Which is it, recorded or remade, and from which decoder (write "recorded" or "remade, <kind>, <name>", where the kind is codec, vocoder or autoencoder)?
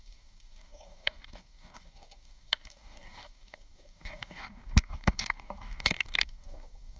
remade, codec, DAC